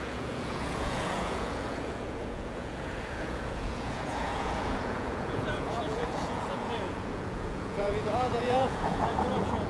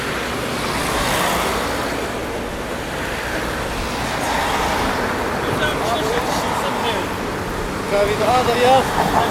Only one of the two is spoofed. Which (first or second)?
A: first